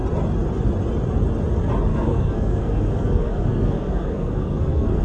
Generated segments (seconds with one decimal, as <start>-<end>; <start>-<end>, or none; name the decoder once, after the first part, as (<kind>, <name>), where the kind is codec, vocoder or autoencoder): 1.9-5.0 (codec, SNAC)

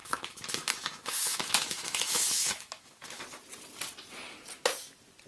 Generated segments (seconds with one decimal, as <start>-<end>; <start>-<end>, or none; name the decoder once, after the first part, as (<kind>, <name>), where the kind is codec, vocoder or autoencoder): 0.0-3.2 (autoencoder, DAC-VAE)